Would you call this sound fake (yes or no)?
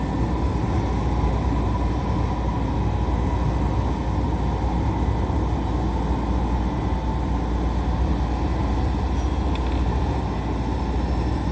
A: no